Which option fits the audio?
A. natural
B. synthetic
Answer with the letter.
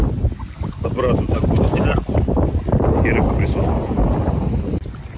A